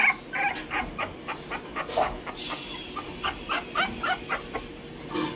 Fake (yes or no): no